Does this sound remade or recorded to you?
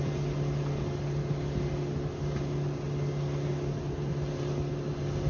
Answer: recorded